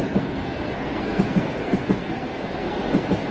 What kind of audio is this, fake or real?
fake